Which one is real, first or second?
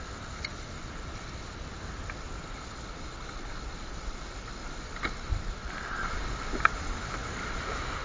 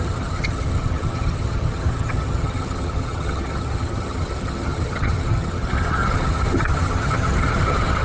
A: first